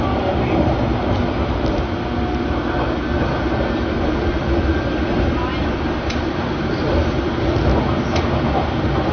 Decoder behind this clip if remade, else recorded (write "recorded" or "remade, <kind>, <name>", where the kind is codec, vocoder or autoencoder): recorded